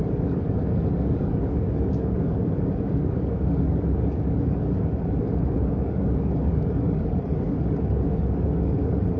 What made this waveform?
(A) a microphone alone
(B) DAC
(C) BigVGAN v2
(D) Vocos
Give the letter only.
B